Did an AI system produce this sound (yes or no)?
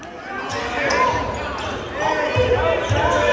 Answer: no